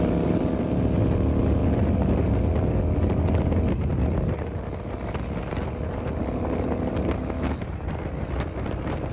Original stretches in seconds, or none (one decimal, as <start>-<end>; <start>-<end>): 0.0-9.1